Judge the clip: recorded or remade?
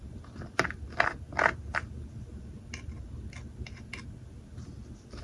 recorded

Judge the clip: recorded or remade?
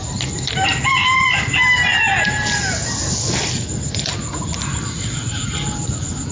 recorded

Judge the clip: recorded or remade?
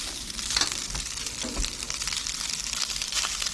recorded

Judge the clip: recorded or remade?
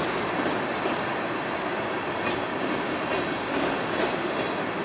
recorded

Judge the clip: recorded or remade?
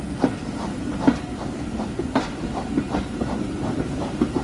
recorded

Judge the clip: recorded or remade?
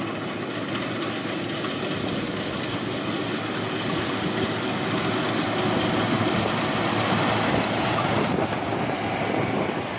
recorded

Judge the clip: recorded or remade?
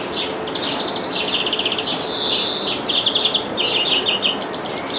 recorded